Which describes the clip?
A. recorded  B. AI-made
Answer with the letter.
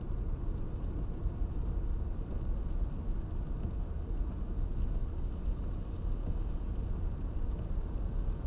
A